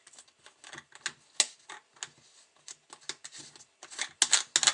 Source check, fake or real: real